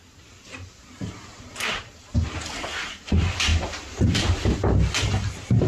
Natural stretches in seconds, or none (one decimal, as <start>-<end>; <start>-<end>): 0.0-5.7